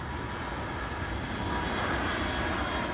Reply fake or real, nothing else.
real